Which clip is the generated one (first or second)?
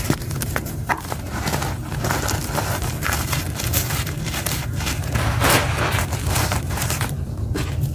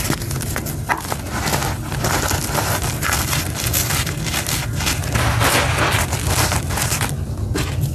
first